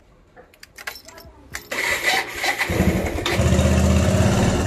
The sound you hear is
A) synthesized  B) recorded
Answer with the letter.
B